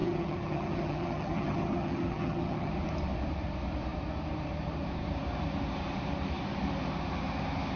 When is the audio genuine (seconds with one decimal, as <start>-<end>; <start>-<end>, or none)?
2.7-7.8